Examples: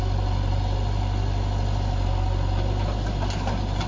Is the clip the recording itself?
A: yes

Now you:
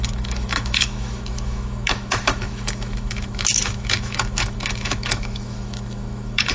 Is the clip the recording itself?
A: no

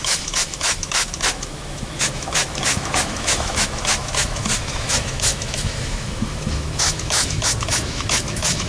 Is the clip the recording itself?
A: no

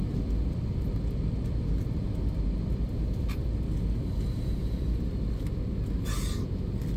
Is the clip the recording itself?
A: yes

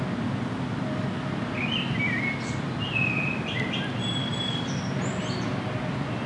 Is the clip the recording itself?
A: yes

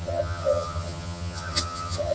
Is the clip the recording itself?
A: no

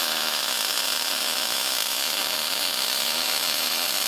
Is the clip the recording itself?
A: no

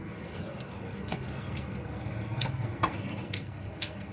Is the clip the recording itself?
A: no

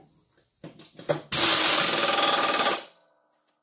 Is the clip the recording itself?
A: yes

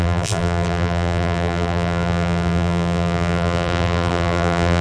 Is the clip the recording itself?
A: no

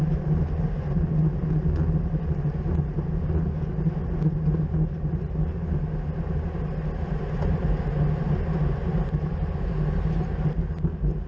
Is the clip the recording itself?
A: yes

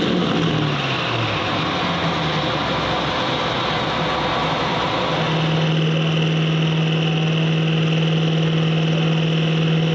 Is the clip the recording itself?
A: yes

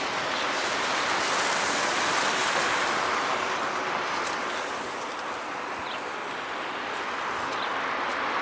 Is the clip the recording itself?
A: yes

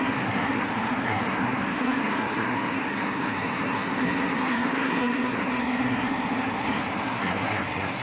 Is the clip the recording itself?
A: no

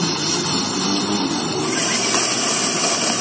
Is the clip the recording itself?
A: yes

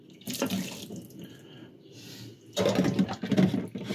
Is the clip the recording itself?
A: yes